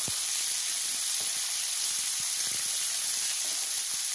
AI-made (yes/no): no